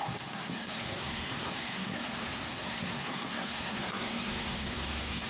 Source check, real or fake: fake